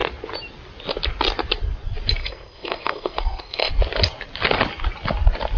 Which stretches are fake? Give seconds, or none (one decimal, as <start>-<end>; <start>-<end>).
2.2-3.7